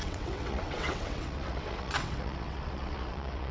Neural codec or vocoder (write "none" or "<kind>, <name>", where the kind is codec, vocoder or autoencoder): vocoder, WaveNeXt